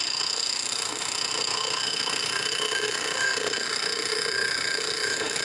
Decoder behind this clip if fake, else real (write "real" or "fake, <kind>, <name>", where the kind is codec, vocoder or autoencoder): fake, autoencoder, DAC-VAE